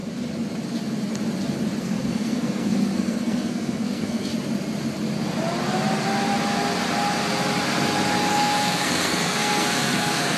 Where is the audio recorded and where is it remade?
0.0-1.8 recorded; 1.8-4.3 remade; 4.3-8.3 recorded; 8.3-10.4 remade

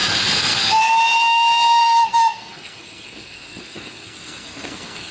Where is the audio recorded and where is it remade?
0.0-0.8 remade; 0.8-1.8 recorded; 1.8-5.1 remade

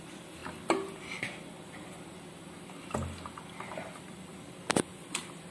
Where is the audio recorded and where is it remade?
0.0-5.5 recorded

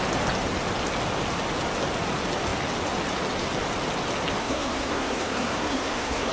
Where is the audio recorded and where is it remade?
0.0-4.4 recorded; 4.4-6.3 remade

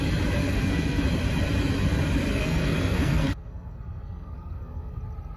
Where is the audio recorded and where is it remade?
0.0-0.4 recorded; 0.4-1.0 remade; 1.0-2.3 recorded; 2.3-5.0 remade; 5.0-5.4 recorded

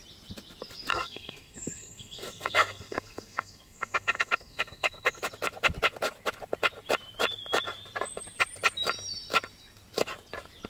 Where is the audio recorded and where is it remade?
0.0-0.9 recorded; 0.9-5.2 remade; 5.2-10.7 recorded

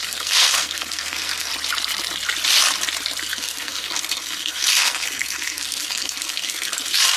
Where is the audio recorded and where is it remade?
0.0-1.5 remade; 1.5-3.2 recorded; 3.2-7.2 remade